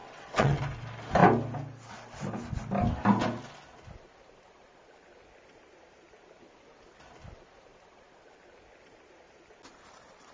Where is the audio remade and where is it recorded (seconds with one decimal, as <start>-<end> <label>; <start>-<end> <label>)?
0.0-0.6 remade; 0.6-10.3 recorded

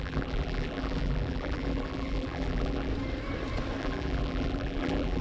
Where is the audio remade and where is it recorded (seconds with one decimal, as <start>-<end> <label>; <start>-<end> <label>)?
0.0-2.9 remade; 2.9-3.8 recorded; 3.8-5.2 remade

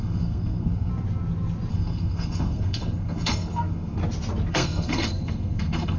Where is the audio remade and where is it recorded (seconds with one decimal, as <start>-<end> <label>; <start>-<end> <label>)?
0.0-0.9 remade; 0.9-1.7 recorded; 1.7-4.0 remade; 4.0-4.5 recorded; 4.5-6.0 remade

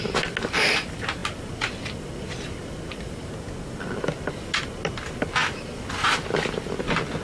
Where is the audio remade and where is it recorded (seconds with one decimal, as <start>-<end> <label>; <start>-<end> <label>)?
0.0-7.2 recorded

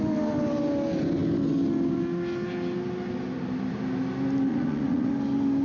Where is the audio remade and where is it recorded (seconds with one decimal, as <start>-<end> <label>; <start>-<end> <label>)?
0.0-4.5 recorded; 4.5-5.1 remade; 5.1-5.6 recorded

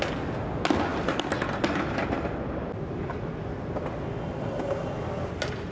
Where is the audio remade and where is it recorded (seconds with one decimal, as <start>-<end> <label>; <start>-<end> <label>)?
0.0-5.7 recorded

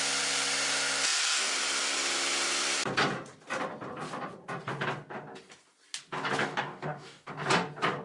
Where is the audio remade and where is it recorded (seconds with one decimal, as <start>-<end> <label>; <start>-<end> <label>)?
0.0-6.4 recorded; 6.4-7.3 remade; 7.3-8.0 recorded